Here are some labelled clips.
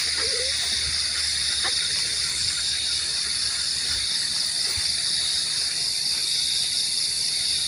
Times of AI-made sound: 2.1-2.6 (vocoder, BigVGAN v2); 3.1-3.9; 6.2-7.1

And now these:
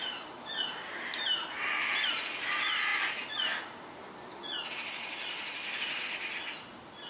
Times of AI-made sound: 0.9-2.5 (vocoder, BigVGAN v2)

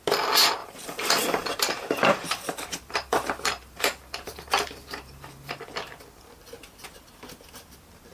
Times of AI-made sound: 0.6-5.5 (vocoder, BigVGAN v2)

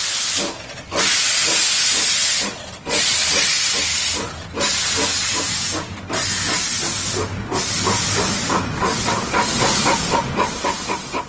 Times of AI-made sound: none